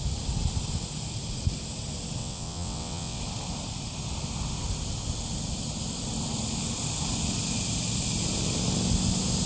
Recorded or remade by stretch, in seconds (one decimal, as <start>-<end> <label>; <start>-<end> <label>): 0.0-2.2 recorded; 2.2-3.2 remade; 3.2-9.5 recorded